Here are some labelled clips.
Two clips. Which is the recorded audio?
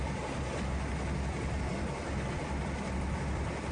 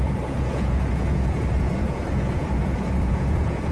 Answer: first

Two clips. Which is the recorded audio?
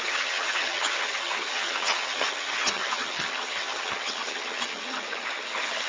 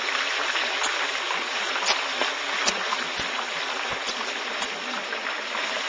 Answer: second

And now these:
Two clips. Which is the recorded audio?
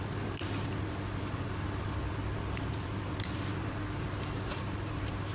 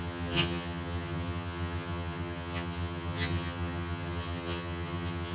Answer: first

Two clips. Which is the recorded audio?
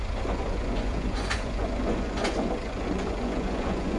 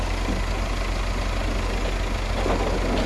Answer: second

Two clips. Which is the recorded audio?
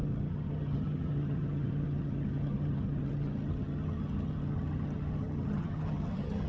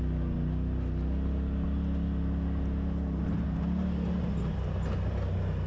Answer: second